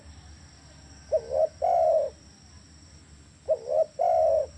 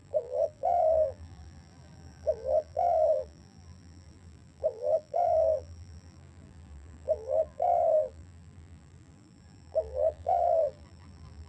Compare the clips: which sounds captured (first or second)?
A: first